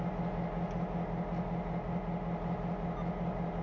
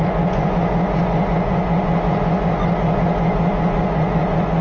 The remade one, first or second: second